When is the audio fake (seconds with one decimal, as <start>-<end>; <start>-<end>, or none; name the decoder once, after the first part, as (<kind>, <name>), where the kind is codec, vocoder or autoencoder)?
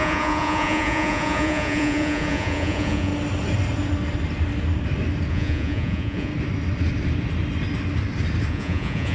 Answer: 0.0-3.1 (vocoder, Vocos); 5.3-6.3; 8.5-9.1